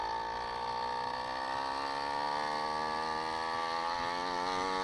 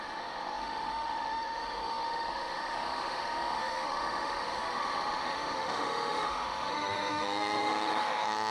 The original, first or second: first